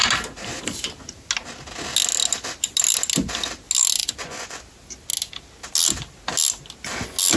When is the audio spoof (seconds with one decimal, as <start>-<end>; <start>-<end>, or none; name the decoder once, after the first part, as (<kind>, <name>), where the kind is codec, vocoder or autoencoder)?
4.0-4.6 (vocoder, Vocos)